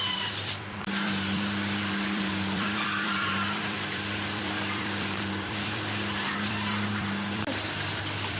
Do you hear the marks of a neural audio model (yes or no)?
yes